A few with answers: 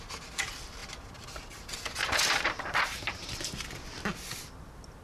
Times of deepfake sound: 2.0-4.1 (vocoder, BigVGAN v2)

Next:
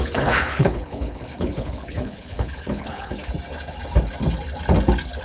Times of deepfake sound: 0.0-3.1 (codec, HILCodec)

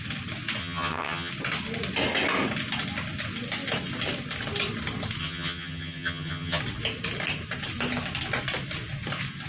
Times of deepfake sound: 0.6-1.3 (vocoder, HiFi-GAN); 5.2-6.6

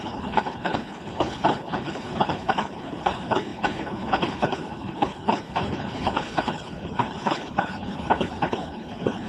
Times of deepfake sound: 0.0-9.3 (codec, HILCodec)

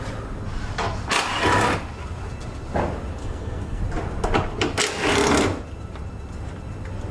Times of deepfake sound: 3.2-3.8 (codec, SNAC)